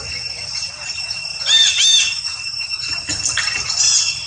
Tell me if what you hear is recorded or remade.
remade